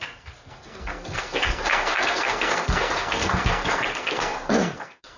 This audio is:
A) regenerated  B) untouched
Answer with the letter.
A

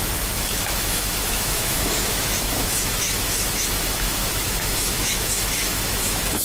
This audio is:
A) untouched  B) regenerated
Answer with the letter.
B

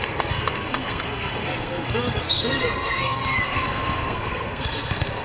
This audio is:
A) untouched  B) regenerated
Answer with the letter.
B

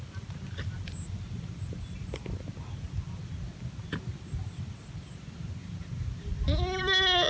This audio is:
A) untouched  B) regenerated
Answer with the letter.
A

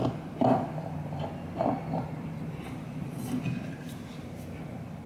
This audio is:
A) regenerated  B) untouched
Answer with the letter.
B